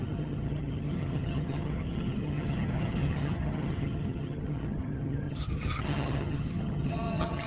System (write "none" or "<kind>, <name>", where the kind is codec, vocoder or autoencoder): vocoder, HiFi-GAN